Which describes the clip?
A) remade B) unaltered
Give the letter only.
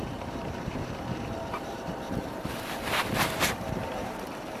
A